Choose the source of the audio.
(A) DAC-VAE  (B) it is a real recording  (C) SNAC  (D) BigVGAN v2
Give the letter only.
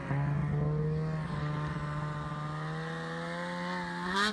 B